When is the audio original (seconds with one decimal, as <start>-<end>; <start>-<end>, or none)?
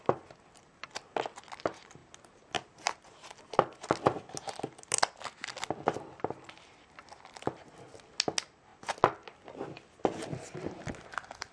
0.0-11.5